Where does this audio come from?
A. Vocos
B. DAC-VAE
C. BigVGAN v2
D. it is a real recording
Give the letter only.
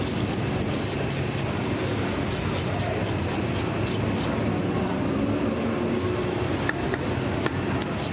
D